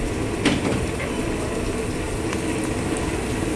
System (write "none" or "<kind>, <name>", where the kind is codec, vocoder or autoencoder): none